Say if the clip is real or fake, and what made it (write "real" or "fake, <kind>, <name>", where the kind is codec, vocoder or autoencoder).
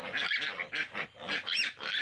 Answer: real